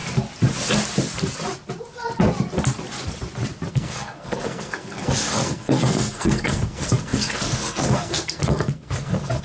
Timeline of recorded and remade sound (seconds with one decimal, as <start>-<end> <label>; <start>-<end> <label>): 0.0-3.7 recorded; 3.7-9.4 remade